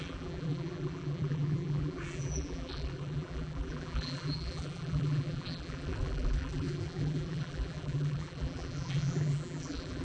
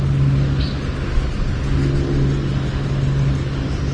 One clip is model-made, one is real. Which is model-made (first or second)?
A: first